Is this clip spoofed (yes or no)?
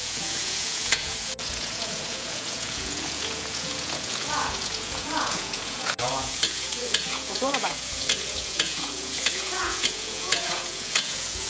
yes